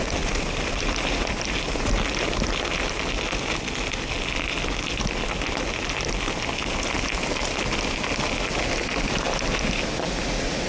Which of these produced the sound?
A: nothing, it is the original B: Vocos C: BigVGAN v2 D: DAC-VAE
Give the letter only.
A